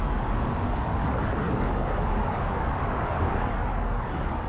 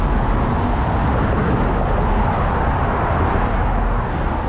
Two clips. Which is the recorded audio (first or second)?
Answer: second